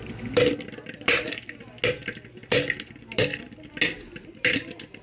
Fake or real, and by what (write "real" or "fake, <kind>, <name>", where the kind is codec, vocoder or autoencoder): real